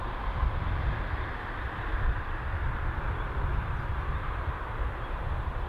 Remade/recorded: remade